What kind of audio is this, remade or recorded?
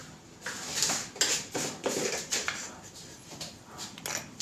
recorded